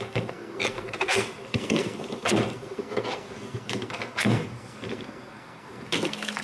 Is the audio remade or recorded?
remade